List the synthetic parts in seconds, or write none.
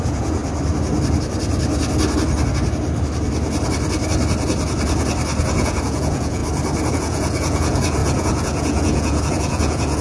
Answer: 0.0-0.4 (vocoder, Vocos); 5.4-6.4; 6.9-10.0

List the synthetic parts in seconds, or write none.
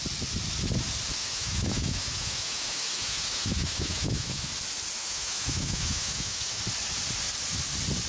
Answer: 1.2-4.5 (autoencoder, DAC-VAE); 5.0-6.6